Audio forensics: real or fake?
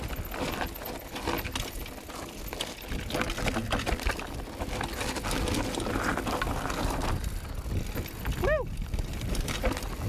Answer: real